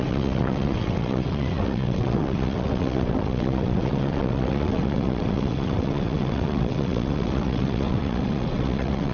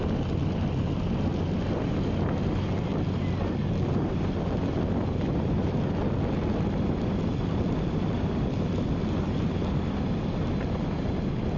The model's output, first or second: first